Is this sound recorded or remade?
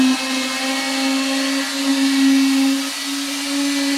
recorded